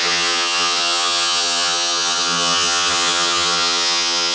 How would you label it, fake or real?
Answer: fake